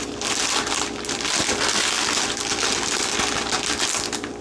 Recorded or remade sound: recorded